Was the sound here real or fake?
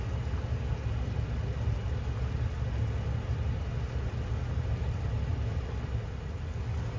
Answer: real